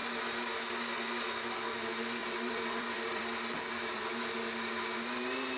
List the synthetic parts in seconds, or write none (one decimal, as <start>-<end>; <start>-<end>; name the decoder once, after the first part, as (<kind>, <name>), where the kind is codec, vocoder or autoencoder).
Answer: 2.2-3.2 (vocoder, BigVGAN v2)